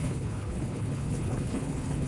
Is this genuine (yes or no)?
no